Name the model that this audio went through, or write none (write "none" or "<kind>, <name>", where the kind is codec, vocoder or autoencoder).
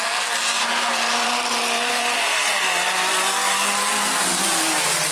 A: vocoder, BigVGAN v2